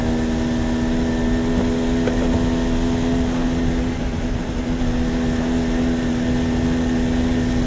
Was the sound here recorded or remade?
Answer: recorded